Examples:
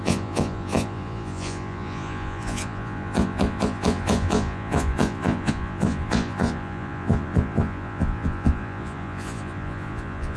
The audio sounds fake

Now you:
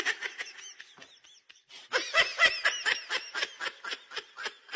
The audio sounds real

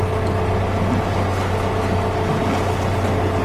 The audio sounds real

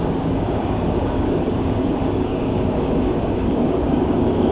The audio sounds fake